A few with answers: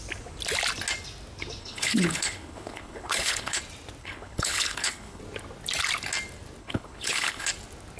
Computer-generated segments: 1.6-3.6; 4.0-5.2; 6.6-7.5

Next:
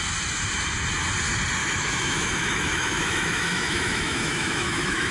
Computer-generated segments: 1.6-5.1

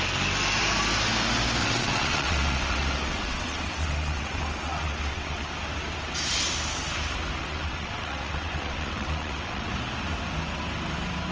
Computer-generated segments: 1.6-5.5; 7.4-9.7

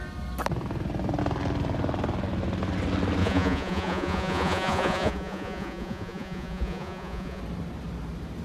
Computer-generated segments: 3.2-7.4

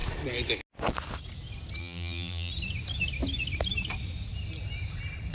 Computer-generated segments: 1.8-2.5

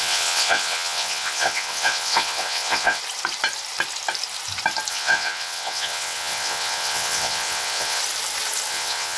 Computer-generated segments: 0.0-3.0; 4.9-8.0; 8.7-9.2

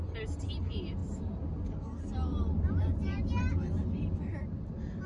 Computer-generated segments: none